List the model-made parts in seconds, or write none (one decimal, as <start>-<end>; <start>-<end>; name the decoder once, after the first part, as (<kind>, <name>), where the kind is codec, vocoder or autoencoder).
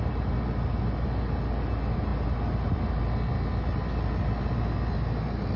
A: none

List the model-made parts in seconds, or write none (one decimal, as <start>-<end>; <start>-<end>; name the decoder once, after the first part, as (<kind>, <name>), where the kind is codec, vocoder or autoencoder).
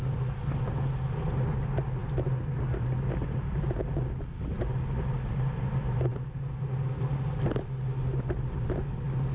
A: none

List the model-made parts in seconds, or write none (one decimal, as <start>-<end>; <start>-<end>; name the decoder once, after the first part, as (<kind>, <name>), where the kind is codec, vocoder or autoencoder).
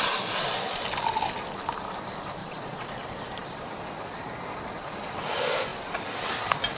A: 2.4-2.9 (vocoder, Vocos)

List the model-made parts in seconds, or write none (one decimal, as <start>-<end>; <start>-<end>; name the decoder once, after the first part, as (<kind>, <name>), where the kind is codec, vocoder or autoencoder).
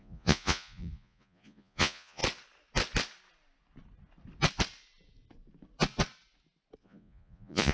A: 0.0-2.2 (vocoder, Vocos); 6.8-7.7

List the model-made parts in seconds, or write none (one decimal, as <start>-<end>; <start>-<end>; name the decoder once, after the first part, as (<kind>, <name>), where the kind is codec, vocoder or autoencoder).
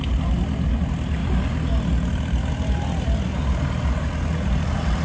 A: none